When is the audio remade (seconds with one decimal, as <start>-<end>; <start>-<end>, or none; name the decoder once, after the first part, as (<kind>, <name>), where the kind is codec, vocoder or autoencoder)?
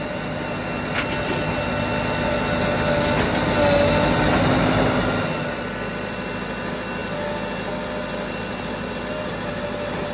none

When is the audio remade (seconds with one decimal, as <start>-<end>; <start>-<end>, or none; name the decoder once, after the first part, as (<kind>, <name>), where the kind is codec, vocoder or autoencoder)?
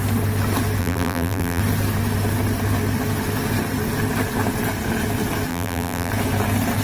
0.8-1.6 (vocoder, BigVGAN v2); 5.5-6.1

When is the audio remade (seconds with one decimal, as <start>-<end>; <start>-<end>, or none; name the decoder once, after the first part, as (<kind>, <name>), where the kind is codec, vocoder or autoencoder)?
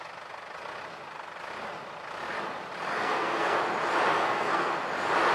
2.9-3.6 (codec, SNAC); 4.1-4.7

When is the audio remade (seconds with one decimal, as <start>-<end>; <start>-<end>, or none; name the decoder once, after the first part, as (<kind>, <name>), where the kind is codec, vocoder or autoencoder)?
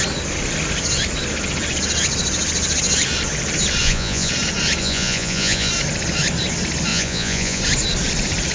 3.8-4.3 (vocoder, Vocos); 4.8-5.7; 6.9-7.6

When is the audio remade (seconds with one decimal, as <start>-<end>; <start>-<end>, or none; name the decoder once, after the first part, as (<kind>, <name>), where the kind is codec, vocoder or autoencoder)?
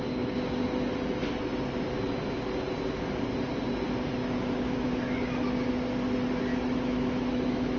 4.2-5.7 (autoencoder, DAC-VAE); 6.5-7.8